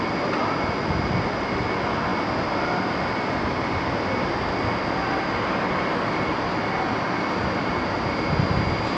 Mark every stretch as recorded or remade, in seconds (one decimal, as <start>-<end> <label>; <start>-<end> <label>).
0.0-9.0 recorded